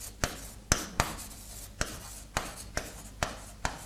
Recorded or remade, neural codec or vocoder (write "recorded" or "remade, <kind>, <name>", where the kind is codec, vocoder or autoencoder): recorded